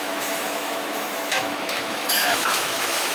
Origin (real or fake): fake